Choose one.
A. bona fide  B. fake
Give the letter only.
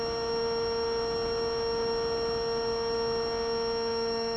A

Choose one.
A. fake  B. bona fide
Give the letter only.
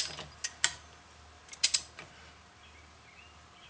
B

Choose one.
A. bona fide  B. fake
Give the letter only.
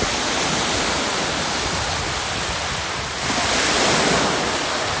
A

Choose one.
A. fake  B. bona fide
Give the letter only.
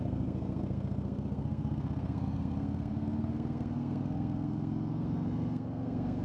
A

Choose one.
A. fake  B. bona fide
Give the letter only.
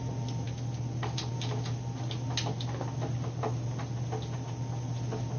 B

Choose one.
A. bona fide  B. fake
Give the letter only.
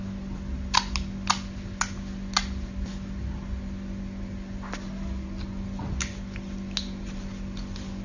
A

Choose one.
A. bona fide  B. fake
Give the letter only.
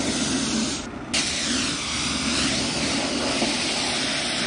A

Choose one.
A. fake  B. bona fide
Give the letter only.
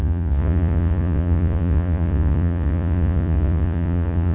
A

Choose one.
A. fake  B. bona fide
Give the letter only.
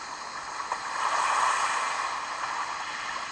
B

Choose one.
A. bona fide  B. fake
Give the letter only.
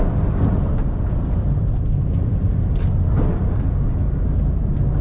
A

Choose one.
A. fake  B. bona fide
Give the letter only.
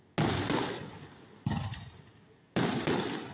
B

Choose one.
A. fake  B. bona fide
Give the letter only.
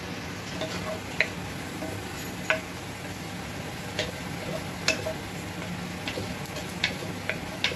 B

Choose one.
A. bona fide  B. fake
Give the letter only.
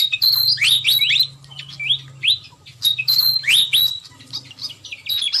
A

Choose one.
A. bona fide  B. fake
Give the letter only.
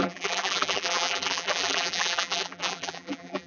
B